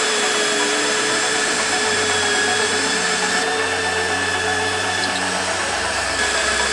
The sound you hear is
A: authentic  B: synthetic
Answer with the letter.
B